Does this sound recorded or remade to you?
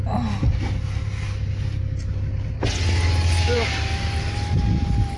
recorded